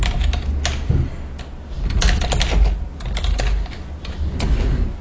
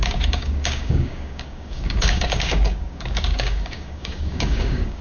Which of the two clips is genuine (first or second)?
first